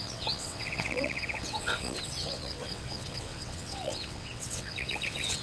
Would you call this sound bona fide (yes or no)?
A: no